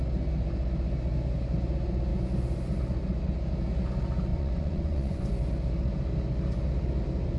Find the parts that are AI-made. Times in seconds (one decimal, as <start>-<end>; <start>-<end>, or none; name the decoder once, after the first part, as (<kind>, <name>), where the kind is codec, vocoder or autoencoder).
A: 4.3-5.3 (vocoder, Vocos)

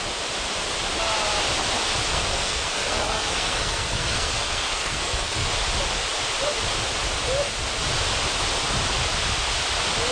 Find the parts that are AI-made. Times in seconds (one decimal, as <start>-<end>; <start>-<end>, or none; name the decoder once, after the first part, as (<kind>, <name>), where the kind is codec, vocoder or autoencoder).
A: 2.1-5.5 (codec, SNAC)

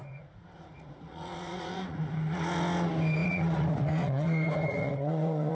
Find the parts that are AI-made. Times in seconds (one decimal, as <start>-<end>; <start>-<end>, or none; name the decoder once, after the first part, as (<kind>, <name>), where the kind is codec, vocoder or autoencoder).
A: 0.0-2.1 (vocoder, Vocos); 3.2-5.5